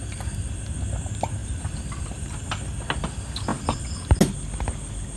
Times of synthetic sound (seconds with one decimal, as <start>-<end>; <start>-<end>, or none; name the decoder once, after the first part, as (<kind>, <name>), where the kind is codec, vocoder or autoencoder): 1.4-2.5 (vocoder, BigVGAN v2)